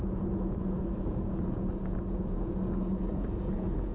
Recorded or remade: remade